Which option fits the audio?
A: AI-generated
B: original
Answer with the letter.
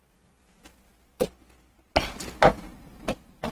B